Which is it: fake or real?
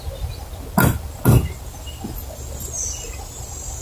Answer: real